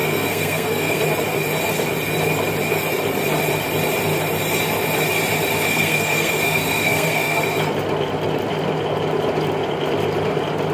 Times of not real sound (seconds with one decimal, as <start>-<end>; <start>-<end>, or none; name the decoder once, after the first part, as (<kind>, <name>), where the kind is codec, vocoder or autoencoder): 0.0-1.0 (codec, SNAC); 5.7-7.4